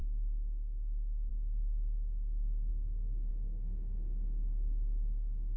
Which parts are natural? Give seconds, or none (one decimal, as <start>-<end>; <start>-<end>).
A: 2.7-3.3